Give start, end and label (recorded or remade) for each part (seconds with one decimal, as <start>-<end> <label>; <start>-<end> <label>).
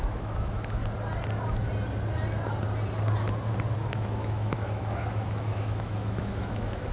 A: 0.0-0.8 remade; 0.8-3.8 recorded; 3.8-6.9 remade